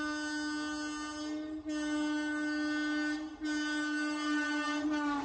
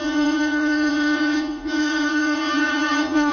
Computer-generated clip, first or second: second